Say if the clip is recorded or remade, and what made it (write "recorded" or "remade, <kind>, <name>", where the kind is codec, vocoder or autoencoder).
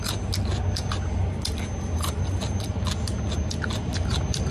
recorded